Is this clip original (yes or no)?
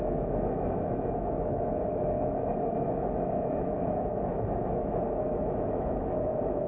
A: no